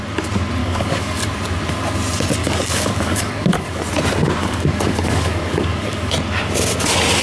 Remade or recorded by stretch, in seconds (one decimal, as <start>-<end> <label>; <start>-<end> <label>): 0.0-0.6 recorded; 0.6-1.2 remade; 1.2-2.4 recorded; 2.4-3.8 remade; 3.8-4.4 recorded; 4.4-6.1 remade; 6.1-7.2 recorded